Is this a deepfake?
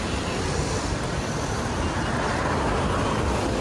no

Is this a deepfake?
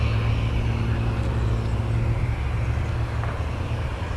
no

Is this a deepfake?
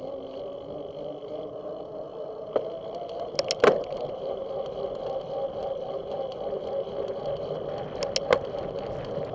no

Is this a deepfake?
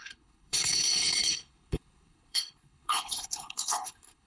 yes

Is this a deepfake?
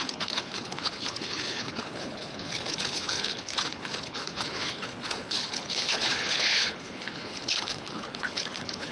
yes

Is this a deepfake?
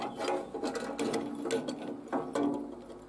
no